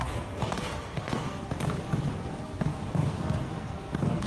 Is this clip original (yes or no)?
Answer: no